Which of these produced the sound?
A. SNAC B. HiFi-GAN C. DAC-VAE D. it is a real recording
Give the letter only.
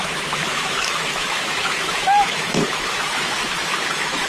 C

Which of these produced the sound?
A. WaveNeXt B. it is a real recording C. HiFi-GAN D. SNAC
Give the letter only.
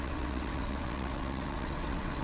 A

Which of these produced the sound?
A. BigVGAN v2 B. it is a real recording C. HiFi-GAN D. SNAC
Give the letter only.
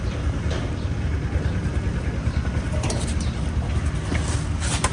B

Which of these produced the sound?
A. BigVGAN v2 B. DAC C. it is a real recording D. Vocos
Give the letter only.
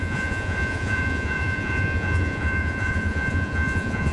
D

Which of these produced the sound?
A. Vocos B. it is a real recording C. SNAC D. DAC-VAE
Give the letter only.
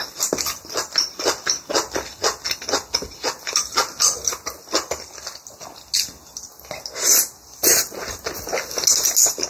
B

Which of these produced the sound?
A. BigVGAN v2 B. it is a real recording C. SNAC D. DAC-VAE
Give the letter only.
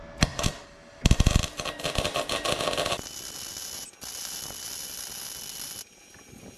B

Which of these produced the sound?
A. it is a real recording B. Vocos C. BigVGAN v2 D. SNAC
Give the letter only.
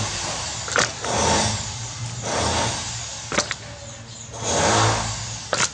A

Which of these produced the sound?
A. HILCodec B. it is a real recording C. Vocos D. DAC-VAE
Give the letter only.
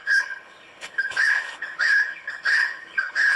A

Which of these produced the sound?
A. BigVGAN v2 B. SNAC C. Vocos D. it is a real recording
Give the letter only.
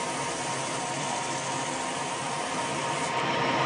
D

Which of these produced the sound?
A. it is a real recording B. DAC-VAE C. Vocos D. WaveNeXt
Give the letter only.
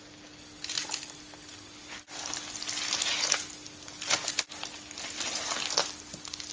A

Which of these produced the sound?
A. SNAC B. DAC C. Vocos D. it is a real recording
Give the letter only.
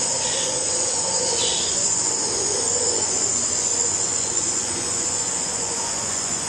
C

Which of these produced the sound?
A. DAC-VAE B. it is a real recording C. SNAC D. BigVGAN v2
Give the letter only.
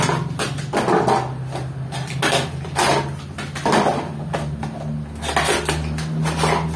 B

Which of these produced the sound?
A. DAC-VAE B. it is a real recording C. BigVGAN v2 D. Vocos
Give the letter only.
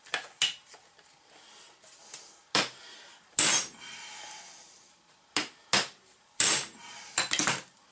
B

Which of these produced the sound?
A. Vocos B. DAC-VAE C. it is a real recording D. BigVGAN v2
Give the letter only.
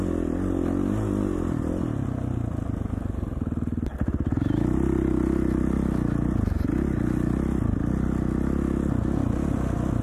C